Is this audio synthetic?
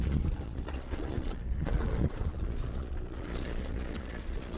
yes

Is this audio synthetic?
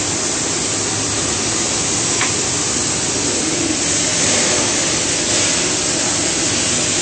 no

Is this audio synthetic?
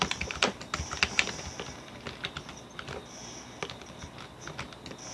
no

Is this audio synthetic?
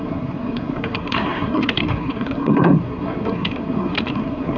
yes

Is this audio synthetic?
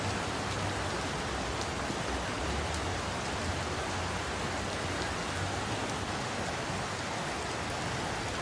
no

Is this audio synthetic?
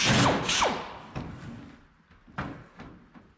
no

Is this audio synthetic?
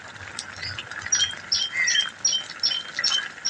no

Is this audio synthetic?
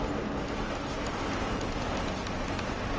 no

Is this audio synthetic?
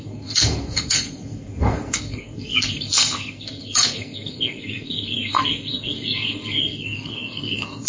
yes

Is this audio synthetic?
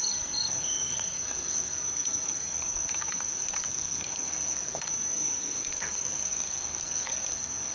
yes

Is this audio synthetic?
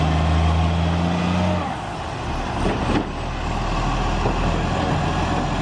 no